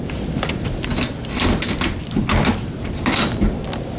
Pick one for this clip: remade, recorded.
recorded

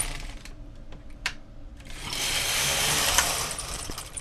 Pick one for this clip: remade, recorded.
remade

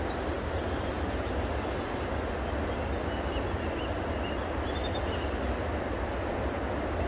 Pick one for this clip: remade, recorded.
recorded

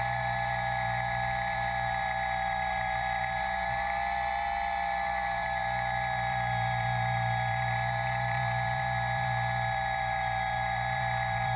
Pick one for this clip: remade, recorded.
remade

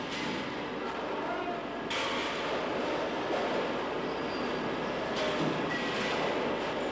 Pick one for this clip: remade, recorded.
recorded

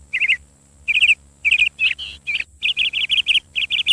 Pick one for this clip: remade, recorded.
recorded